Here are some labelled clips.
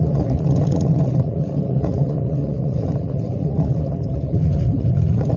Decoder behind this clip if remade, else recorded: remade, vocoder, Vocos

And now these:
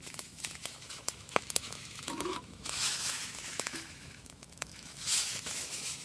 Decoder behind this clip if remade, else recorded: remade, autoencoder, DAC-VAE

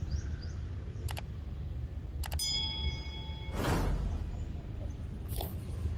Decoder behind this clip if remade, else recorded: recorded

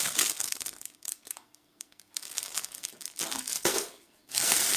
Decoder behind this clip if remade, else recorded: remade, codec, SNAC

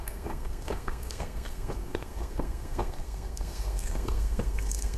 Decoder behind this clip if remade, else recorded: remade, codec, SNAC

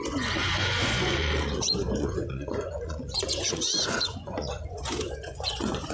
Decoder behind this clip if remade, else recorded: remade, vocoder, Vocos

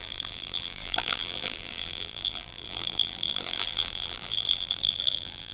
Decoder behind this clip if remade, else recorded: remade, vocoder, BigVGAN v2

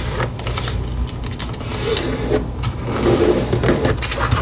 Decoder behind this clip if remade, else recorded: recorded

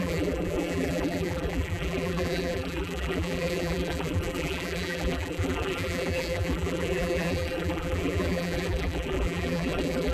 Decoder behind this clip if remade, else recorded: remade, vocoder, BigVGAN v2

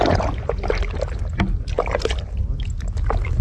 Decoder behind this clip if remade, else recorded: recorded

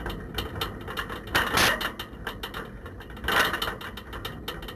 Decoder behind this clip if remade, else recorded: recorded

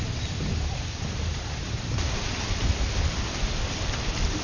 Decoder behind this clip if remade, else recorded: recorded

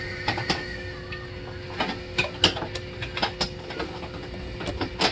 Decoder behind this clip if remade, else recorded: recorded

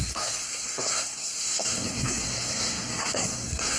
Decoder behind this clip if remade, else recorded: remade, codec, SNAC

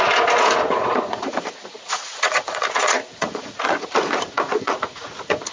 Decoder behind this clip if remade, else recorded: remade, vocoder, Vocos